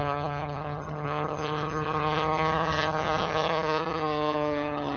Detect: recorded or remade remade